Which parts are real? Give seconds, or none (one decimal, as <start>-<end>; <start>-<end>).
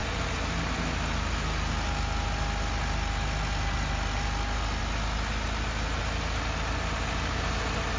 0.0-8.0